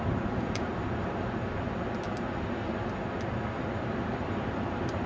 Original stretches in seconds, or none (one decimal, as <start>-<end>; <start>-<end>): 0.7-3.8